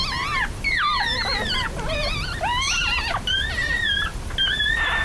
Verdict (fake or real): fake